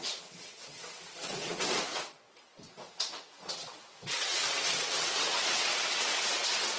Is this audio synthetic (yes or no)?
yes